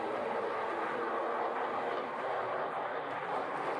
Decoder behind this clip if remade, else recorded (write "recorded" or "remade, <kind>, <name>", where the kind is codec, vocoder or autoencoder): recorded